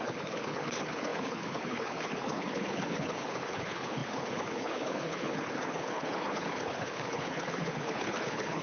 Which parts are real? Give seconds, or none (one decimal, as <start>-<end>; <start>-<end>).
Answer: none